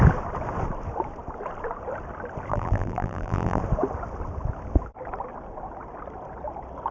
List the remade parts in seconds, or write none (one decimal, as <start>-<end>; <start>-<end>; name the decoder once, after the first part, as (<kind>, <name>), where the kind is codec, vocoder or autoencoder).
2.5-3.6 (vocoder, BigVGAN v2)